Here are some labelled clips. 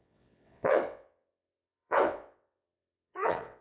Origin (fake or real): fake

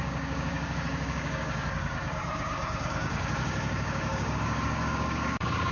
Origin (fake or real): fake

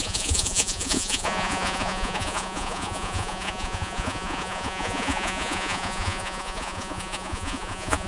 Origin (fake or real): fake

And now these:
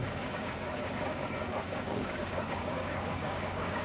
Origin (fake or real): fake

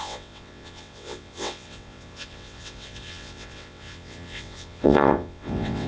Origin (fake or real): fake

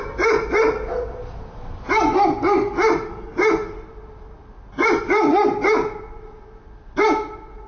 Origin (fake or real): real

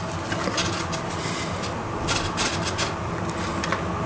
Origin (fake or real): real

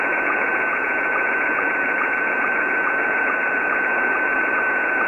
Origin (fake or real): fake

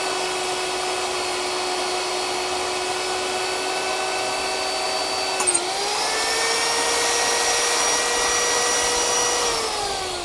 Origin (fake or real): real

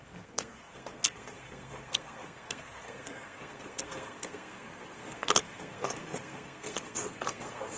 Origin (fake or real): fake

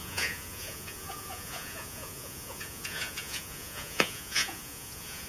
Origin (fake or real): fake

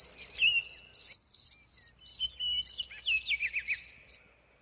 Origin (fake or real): real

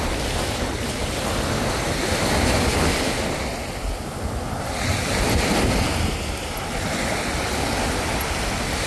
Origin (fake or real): real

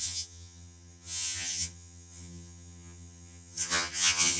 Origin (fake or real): fake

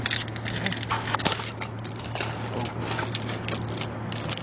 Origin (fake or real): real